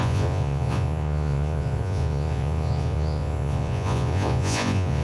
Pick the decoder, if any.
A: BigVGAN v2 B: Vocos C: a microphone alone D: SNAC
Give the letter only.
B